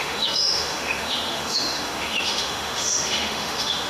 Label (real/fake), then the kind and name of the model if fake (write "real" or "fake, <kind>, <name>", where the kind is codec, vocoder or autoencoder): fake, autoencoder, DAC-VAE